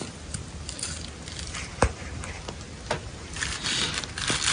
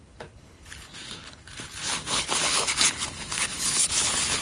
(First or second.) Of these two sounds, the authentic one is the first